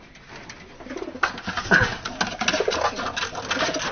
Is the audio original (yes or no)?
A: yes